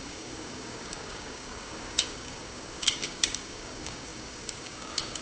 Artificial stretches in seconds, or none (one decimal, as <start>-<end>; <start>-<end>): 0.0-5.2